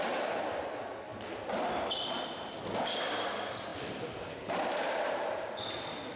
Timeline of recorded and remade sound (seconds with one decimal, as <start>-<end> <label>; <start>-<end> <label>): 0.0-6.2 recorded